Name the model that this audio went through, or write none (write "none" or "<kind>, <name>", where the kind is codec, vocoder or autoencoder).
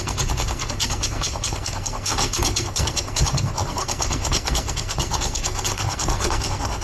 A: codec, SNAC